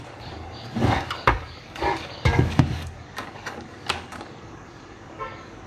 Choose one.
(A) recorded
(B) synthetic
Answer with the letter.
B